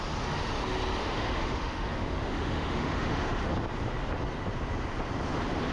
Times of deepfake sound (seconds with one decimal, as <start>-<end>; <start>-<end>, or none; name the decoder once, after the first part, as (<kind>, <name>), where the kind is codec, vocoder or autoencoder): 1.0-3.4 (autoencoder, DAC-VAE)